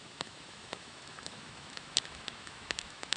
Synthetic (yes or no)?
yes